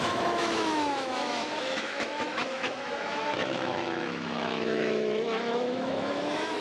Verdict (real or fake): fake